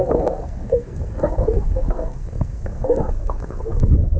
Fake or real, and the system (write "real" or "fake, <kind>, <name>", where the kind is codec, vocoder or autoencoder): fake, codec, SNAC